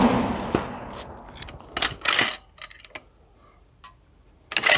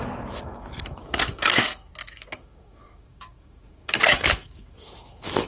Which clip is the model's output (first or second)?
second